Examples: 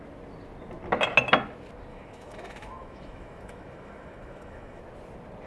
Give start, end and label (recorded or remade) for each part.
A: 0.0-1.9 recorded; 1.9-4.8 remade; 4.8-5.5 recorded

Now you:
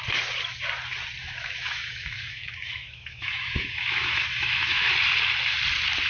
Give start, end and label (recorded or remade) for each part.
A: 0.0-1.2 recorded; 1.2-4.9 remade; 4.9-6.1 recorded